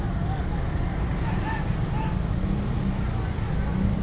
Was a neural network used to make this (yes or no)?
no